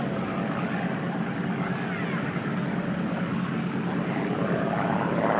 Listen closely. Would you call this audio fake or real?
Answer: real